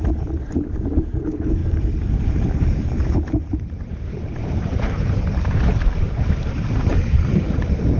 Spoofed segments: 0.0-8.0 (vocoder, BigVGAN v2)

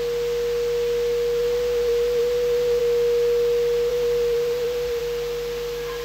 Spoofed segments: 1.4-2.8 (vocoder, BigVGAN v2); 3.9-5.0

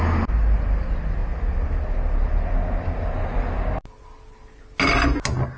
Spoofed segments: none